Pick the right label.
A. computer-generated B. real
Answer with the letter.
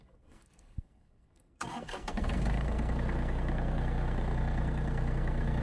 A